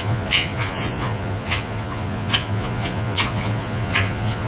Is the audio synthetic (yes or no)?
yes